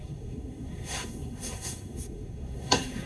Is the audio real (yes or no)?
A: no